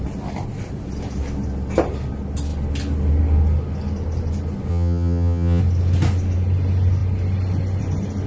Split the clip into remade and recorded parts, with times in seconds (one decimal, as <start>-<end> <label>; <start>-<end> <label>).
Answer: 0.0-4.7 recorded; 4.7-5.6 remade; 5.6-8.3 recorded